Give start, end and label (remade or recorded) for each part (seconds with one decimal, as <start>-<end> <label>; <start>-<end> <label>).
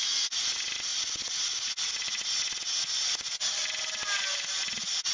0.0-5.1 recorded